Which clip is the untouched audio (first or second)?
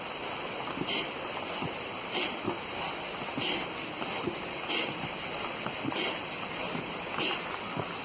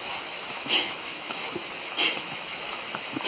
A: first